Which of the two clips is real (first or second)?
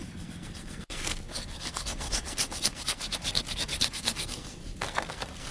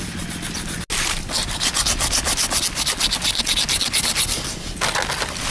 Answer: second